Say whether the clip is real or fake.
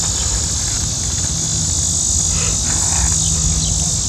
real